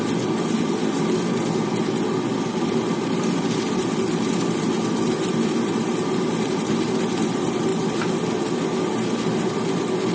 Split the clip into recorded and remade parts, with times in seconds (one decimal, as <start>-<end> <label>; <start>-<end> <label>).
0.0-10.1 recorded